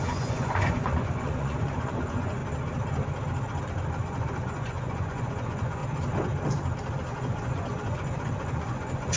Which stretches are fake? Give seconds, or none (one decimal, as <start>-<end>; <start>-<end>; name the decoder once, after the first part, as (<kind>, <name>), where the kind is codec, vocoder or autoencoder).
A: 0.0-2.4 (vocoder, Vocos); 3.9-5.8; 7.1-9.2